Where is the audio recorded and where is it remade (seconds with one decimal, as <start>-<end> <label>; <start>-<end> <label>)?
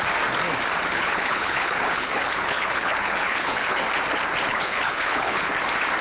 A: 0.0-0.9 recorded; 0.9-3.8 remade; 3.8-4.5 recorded; 4.5-5.5 remade; 5.5-6.0 recorded